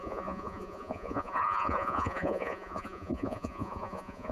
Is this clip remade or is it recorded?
remade